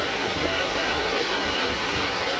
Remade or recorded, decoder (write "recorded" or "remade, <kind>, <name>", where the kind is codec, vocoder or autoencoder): remade, codec, SNAC